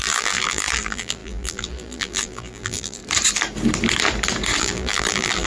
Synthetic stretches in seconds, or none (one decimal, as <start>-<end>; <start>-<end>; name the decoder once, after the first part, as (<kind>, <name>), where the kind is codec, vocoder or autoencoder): 0.0-3.0 (vocoder, BigVGAN v2); 4.6-5.5